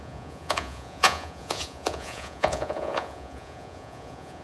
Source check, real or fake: fake